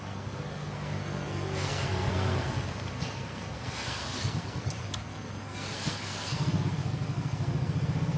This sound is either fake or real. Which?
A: fake